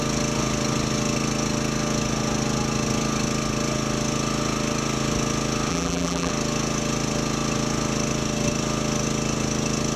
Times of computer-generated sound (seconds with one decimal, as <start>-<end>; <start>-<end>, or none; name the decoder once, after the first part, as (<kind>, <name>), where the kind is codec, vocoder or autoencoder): 5.7-6.3 (vocoder, BigVGAN v2)